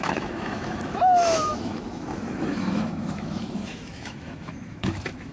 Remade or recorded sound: remade